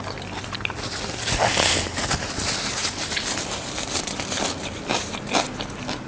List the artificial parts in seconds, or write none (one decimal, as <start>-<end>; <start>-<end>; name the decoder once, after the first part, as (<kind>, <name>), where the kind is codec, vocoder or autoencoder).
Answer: 2.8-5.1 (vocoder, BigVGAN v2)